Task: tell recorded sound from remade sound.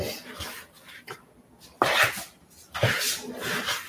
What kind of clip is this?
recorded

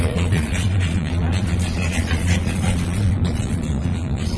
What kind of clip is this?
remade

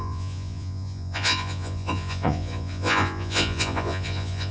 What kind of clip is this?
remade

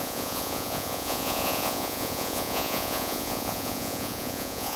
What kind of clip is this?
remade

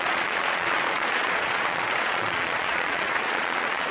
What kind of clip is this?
remade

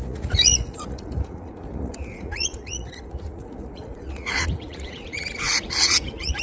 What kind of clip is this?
remade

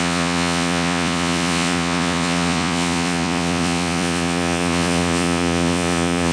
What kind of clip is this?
remade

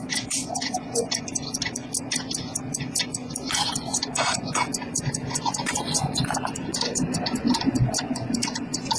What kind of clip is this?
remade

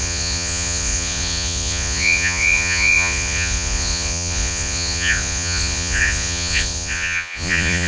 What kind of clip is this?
remade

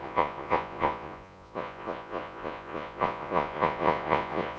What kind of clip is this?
remade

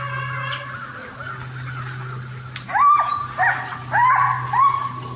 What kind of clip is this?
recorded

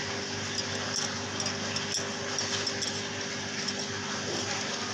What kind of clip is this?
recorded